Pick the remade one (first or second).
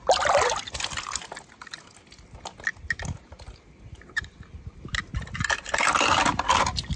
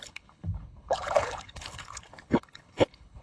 second